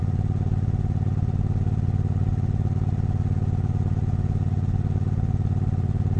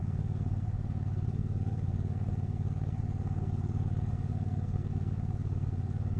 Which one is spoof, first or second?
second